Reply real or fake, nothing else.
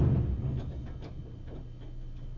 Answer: real